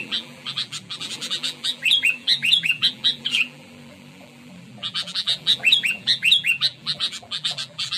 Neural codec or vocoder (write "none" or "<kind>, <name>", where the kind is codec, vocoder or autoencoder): vocoder, BigVGAN v2